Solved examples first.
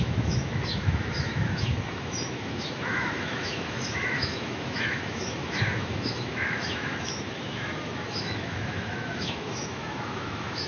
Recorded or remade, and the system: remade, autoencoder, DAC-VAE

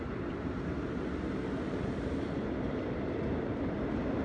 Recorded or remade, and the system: recorded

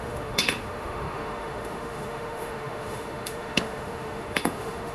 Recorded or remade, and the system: remade, autoencoder, DAC-VAE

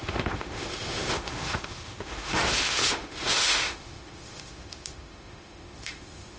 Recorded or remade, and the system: remade, autoencoder, DAC-VAE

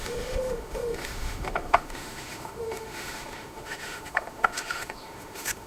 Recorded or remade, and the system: remade, autoencoder, DAC-VAE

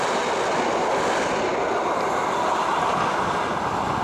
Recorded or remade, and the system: recorded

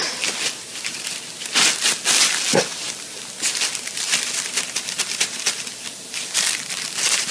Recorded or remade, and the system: recorded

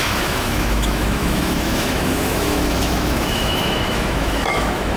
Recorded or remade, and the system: remade, autoencoder, DAC-VAE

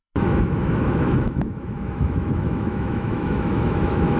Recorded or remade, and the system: remade, autoencoder, DAC-VAE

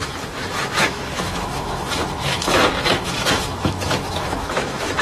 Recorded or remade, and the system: remade, autoencoder, DAC-VAE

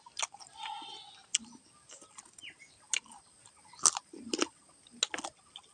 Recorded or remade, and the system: recorded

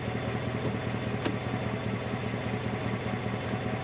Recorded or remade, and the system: recorded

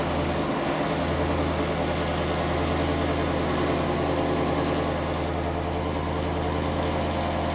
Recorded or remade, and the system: recorded